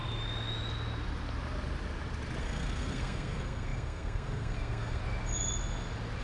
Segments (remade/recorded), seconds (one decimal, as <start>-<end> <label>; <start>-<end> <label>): 0.0-2.4 recorded; 2.4-5.0 remade; 5.0-6.2 recorded